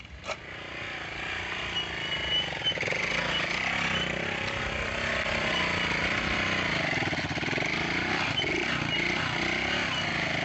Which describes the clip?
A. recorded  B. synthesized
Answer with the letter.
A